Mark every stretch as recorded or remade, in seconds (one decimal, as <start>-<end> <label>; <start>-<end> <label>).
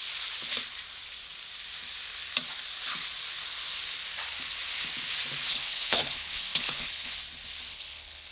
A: 0.0-5.5 recorded; 5.5-7.1 remade; 7.1-7.7 recorded; 7.7-8.3 remade